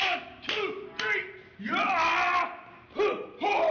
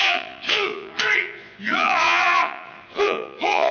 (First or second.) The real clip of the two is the first